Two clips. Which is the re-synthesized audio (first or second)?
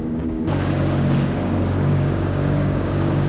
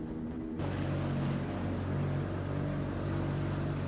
first